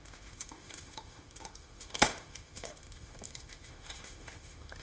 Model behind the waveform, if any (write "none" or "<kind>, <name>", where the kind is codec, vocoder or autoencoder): autoencoder, DAC-VAE